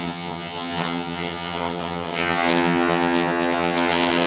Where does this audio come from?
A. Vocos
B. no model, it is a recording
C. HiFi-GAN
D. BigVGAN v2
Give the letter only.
C